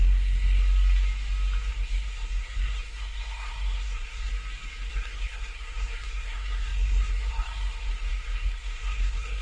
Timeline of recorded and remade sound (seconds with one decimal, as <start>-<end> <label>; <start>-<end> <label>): 0.0-0.6 remade; 0.6-1.7 recorded; 1.7-4.3 remade; 4.3-4.9 recorded; 4.9-9.4 remade